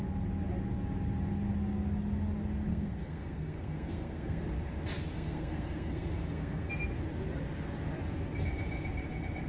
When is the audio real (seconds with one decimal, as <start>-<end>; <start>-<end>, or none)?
0.0-2.7; 4.4-5.1; 6.7-9.5